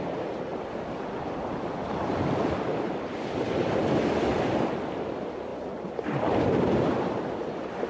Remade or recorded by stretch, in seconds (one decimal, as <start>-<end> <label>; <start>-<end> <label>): 0.0-0.5 recorded; 0.5-2.0 remade; 2.0-5.5 recorded; 5.5-6.9 remade; 6.9-7.9 recorded